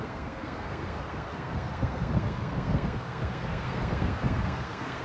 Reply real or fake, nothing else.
fake